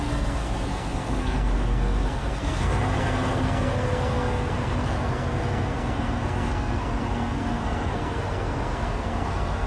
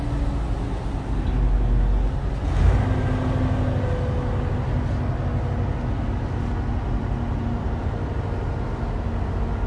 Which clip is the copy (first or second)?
first